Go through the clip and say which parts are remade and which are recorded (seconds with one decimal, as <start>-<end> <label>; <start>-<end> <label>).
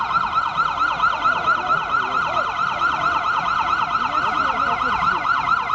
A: 0.0-1.8 recorded; 1.8-3.3 remade; 3.3-5.7 recorded